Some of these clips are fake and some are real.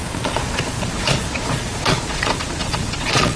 fake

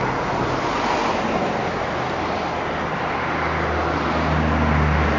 real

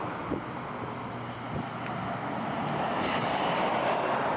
real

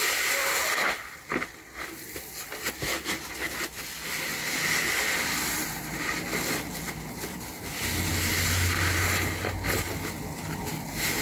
real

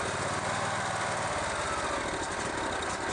real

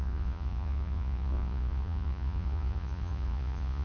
fake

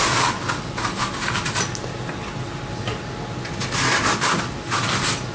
real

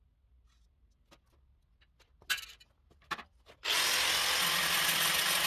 real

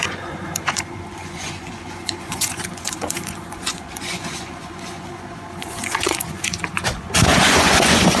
fake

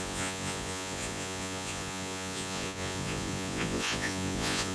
fake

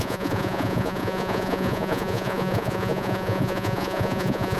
fake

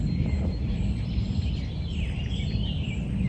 real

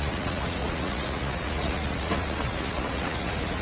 fake